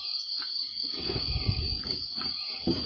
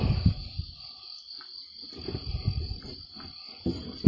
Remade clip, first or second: first